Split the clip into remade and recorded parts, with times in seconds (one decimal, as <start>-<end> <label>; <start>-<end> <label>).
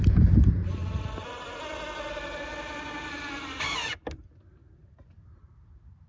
0.0-6.1 recorded